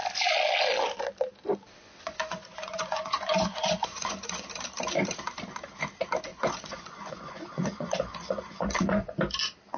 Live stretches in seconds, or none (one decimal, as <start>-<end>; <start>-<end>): 0.0-1.8; 4.5-6.3; 9.2-9.8